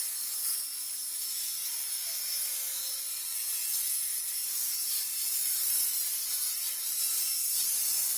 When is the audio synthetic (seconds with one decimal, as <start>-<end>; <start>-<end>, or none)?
4.8-7.1